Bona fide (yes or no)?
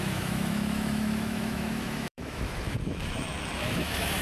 no